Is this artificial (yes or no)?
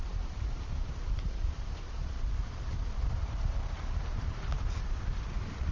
yes